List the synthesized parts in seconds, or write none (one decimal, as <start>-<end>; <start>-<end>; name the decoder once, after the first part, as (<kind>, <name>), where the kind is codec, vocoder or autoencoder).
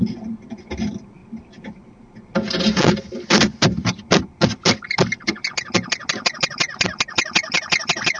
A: none